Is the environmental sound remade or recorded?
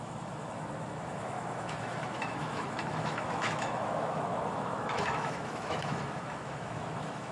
remade